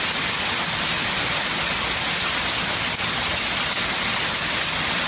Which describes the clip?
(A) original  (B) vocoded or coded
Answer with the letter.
A